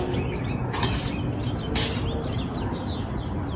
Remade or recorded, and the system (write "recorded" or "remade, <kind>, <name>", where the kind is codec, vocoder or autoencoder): recorded